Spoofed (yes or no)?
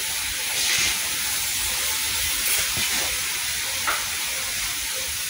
no